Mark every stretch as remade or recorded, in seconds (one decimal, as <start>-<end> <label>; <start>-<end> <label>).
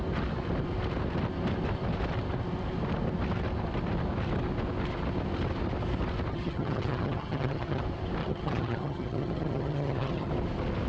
0.0-6.3 recorded; 6.3-7.8 remade; 7.8-8.2 recorded; 8.2-10.3 remade; 10.3-10.9 recorded